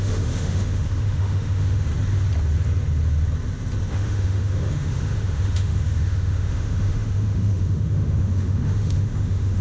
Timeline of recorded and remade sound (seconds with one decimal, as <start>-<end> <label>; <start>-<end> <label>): 0.0-1.9 remade; 1.9-3.9 recorded; 3.9-9.6 remade